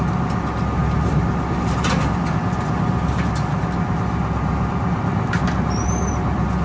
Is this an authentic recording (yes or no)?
yes